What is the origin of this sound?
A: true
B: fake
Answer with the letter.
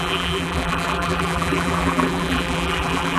B